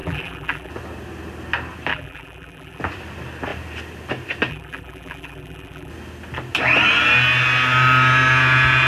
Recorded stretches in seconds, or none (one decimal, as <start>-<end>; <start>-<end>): 0.7-1.9; 2.8-4.5; 5.9-8.9